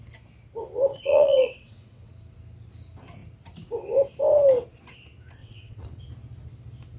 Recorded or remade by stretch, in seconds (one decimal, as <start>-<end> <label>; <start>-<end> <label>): 0.0-0.9 recorded; 0.9-2.1 remade; 2.1-5.4 recorded; 5.4-6.0 remade; 6.0-7.0 recorded